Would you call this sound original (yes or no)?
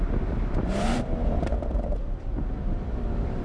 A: no